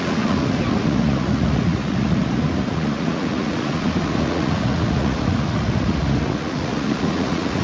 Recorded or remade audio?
remade